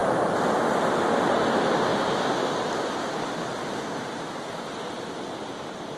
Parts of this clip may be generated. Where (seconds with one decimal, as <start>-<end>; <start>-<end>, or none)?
none